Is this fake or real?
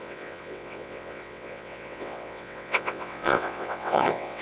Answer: fake